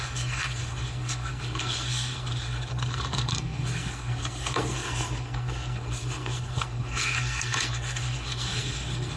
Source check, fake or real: fake